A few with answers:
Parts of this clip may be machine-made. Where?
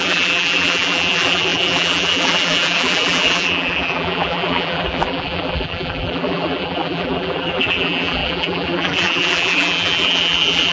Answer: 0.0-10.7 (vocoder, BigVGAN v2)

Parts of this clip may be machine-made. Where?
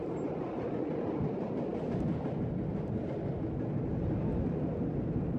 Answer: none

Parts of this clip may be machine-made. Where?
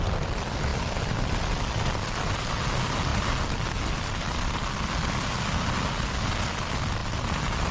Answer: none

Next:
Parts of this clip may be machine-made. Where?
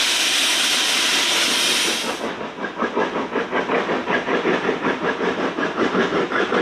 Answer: 4.0-6.6 (vocoder, BigVGAN v2)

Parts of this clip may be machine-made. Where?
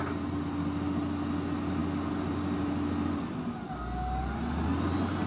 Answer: none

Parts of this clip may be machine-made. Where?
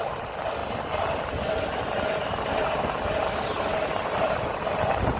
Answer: 2.6-3.9 (vocoder, BigVGAN v2)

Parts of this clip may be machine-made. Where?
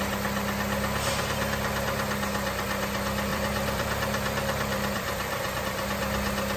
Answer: 3.3-5.6 (vocoder, BigVGAN v2)